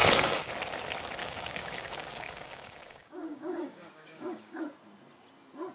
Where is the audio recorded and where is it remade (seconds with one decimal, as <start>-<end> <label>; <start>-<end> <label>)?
0.0-0.5 remade; 0.5-1.2 recorded; 1.2-4.6 remade; 4.6-5.7 recorded